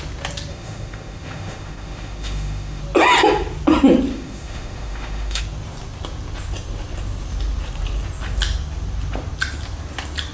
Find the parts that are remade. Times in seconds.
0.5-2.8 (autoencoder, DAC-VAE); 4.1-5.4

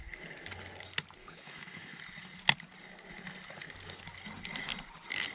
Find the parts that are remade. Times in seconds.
1.2-2.0 (autoencoder, DAC-VAE)

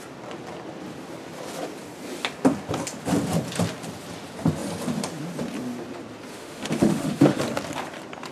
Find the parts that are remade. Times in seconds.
6.3-7.4 (autoencoder, DAC-VAE)

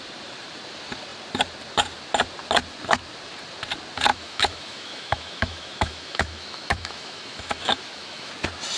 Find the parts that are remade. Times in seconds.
4.1-8.3 (autoencoder, DAC-VAE)

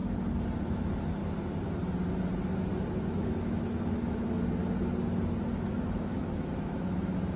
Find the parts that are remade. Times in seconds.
0.6-1.2 (autoencoder, DAC-VAE); 2.9-4.6; 5.7-7.4